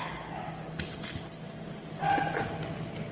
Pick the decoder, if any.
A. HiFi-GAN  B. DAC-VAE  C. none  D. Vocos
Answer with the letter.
C